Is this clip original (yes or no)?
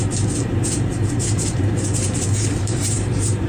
no